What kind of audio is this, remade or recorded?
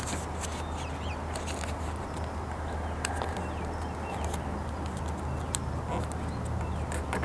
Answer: recorded